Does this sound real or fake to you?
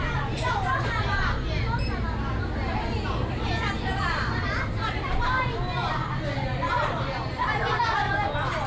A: real